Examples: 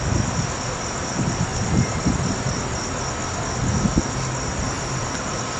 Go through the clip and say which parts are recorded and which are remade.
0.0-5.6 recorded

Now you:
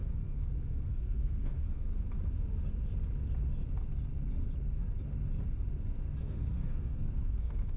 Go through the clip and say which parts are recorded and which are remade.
0.0-1.9 remade; 1.9-6.2 recorded; 6.2-7.8 remade